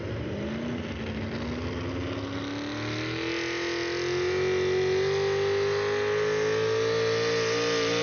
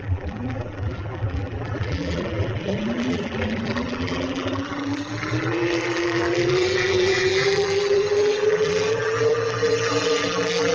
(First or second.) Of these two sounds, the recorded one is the first